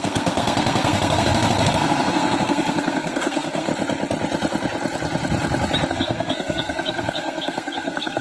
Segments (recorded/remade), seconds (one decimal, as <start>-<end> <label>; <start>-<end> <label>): 0.0-3.7 remade; 3.7-5.9 recorded; 5.9-8.2 remade